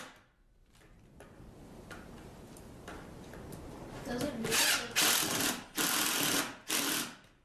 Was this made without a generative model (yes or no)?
yes